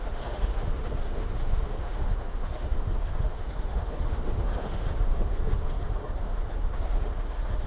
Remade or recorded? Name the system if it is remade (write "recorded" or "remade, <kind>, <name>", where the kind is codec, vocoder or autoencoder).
remade, autoencoder, DAC-VAE